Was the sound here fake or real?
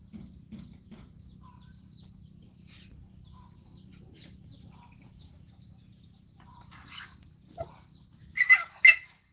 real